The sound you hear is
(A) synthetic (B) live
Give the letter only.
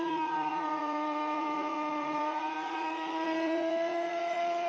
A